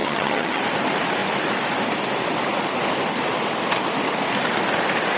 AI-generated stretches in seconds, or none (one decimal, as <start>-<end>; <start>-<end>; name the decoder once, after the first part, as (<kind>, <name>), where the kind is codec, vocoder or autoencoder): 0.0-0.6 (vocoder, HiFi-GAN)